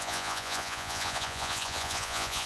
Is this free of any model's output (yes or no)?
no